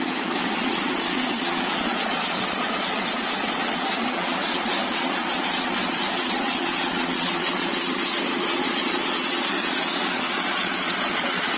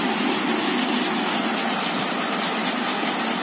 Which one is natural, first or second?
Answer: second